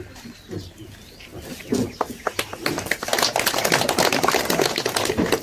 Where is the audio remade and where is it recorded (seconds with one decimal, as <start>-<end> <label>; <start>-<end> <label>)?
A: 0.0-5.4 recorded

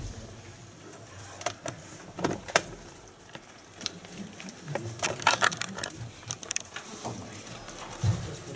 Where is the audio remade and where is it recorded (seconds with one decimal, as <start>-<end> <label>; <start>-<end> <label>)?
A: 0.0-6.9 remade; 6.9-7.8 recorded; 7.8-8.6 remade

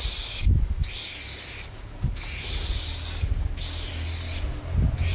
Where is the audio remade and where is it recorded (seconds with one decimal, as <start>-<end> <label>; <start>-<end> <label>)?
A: 0.0-5.1 recorded

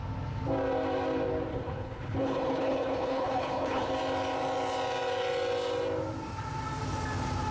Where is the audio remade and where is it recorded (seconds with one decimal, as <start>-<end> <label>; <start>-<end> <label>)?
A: 0.0-1.5 recorded; 1.5-3.9 remade; 3.9-7.5 recorded

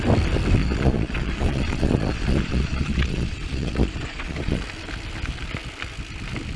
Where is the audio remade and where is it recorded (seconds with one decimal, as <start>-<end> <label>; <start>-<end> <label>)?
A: 0.0-0.6 recorded; 0.6-4.6 remade; 4.6-6.6 recorded

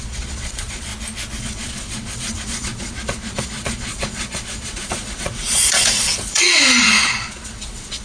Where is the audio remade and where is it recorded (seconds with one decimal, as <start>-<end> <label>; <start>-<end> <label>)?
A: 0.0-0.9 remade; 0.9-1.4 recorded; 1.4-8.0 remade